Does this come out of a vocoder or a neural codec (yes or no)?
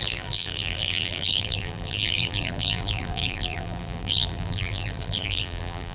yes